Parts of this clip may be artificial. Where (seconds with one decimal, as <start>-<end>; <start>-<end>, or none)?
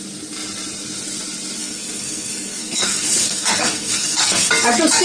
1.6-4.5